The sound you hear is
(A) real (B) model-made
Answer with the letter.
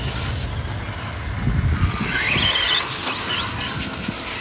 A